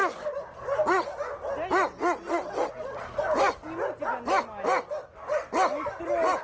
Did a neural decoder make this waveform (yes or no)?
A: no